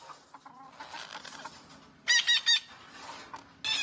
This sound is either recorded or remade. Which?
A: recorded